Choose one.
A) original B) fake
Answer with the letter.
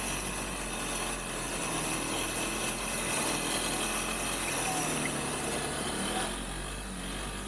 A